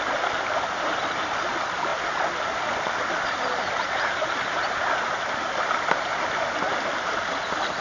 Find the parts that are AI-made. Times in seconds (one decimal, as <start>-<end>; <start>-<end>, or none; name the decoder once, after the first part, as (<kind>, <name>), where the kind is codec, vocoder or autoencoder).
none